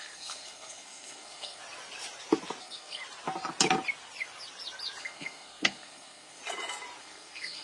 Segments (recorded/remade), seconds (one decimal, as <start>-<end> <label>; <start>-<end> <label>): 0.0-1.6 remade; 1.6-2.6 recorded; 2.6-3.0 remade; 3.0-5.0 recorded; 5.0-6.4 remade; 6.4-7.0 recorded; 7.0-7.6 remade